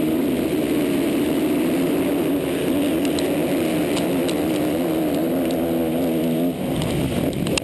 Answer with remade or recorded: recorded